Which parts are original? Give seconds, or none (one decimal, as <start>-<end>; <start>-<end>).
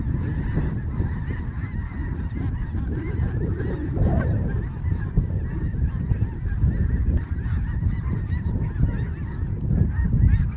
0.0-10.6